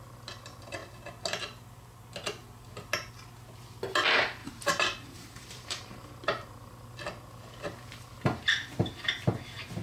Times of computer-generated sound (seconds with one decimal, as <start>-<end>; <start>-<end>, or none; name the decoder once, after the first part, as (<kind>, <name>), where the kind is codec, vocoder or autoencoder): 4.4-6.1 (vocoder, BigVGAN v2)